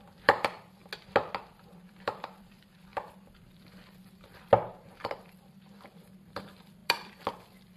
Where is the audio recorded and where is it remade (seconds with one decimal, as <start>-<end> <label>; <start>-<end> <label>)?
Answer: 0.0-0.8 remade; 0.8-1.5 recorded; 1.5-7.8 remade